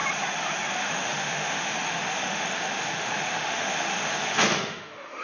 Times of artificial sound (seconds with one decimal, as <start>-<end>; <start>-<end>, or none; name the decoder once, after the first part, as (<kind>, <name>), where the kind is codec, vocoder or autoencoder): 0.7-5.2 (autoencoder, DAC-VAE)